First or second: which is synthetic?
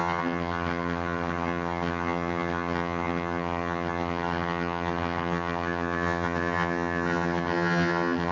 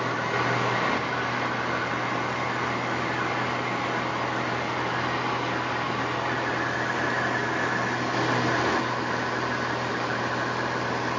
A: first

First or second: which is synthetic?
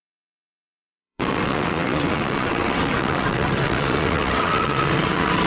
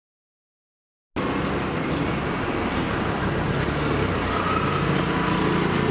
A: first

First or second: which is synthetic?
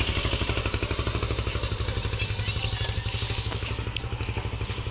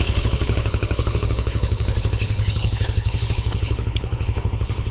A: second